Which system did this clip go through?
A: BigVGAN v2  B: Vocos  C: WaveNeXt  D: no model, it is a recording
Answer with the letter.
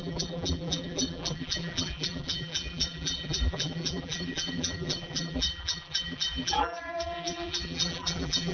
A